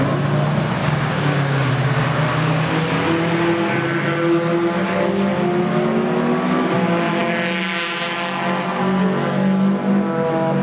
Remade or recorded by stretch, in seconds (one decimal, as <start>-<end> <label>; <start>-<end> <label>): 0.0-0.8 recorded; 0.8-1.7 remade; 1.7-10.6 recorded